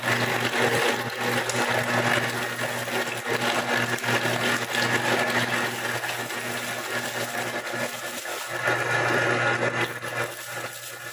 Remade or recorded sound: recorded